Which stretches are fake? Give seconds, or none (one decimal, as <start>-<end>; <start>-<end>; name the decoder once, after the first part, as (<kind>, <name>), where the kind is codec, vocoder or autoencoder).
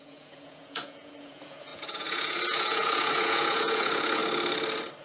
0.0-4.2 (vocoder, Vocos)